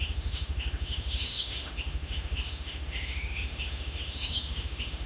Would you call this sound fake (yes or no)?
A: yes